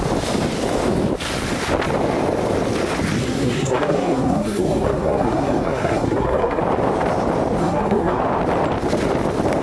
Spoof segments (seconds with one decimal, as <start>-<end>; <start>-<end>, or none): 3.2-6.6; 7.6-8.2